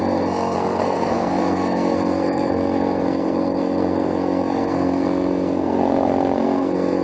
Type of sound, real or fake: fake